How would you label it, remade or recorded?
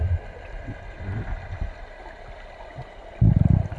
recorded